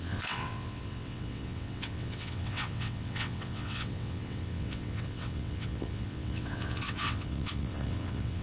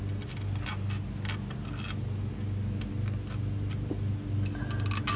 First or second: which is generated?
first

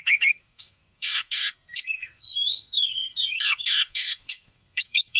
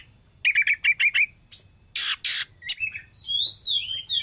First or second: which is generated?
first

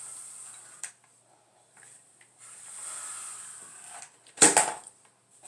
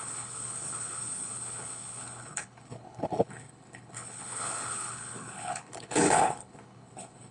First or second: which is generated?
second